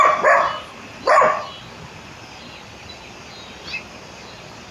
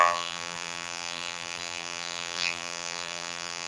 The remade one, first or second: second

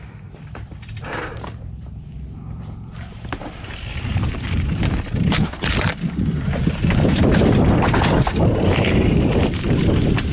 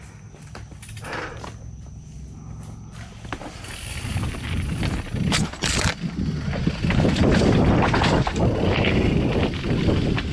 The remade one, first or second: first